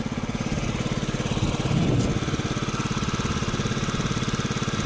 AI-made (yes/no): no